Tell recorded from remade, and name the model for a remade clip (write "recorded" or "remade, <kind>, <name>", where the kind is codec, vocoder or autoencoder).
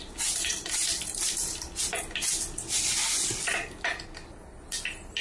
recorded